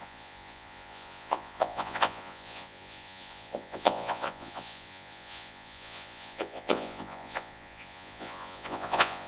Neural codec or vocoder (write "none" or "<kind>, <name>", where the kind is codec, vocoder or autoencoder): vocoder, Vocos